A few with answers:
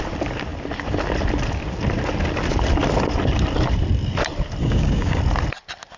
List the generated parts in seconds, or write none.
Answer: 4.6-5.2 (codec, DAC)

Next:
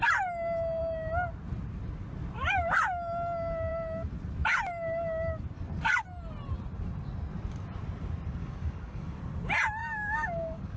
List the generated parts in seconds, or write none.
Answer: 8.4-9.2 (codec, DAC); 9.8-10.8

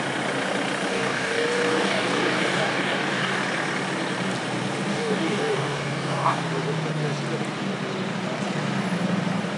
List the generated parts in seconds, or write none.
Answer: 0.9-3.4 (codec, DAC); 4.9-6.4

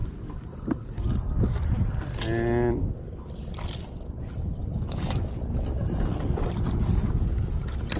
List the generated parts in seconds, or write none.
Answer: 0.0-1.5 (codec, DAC); 4.6-5.3

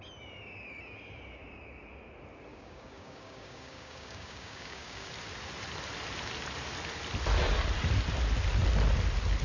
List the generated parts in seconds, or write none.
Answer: 2.5-5.1 (codec, DAC)

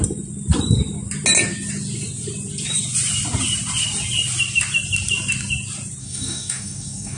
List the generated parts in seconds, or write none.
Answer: 6.0-7.2 (codec, DAC)

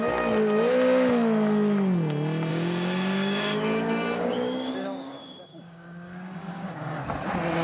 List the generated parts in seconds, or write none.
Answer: 2.5-7.0 (codec, DAC)